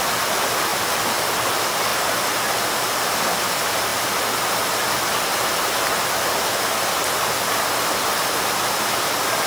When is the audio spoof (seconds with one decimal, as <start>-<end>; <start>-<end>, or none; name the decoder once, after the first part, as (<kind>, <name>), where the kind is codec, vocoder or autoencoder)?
none